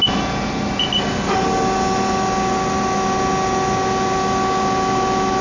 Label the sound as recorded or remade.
recorded